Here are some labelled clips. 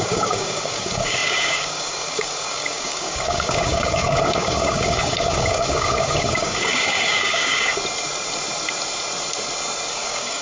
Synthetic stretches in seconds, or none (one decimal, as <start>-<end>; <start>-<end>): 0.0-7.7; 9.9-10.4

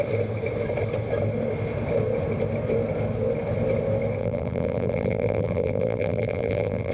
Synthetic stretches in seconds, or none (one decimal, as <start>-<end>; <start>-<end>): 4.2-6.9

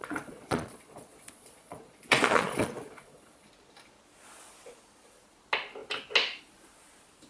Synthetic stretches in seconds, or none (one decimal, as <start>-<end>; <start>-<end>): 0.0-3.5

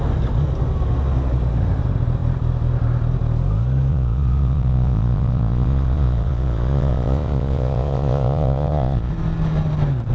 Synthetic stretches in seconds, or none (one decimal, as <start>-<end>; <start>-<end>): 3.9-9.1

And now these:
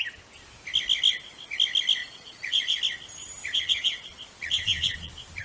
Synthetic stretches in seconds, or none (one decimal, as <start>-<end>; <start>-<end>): 2.0-2.8; 3.4-5.4